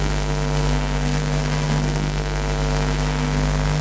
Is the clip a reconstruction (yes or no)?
yes